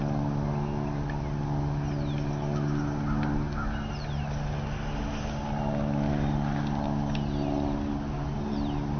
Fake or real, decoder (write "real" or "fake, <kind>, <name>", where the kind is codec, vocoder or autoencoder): real